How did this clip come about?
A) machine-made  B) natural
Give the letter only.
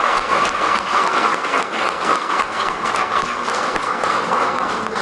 A